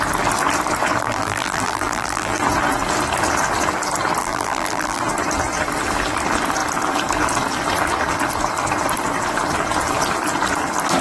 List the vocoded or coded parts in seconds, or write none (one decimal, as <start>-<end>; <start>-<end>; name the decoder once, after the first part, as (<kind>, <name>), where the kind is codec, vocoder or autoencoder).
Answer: 1.0-2.4 (vocoder, BigVGAN v2); 4.2-5.0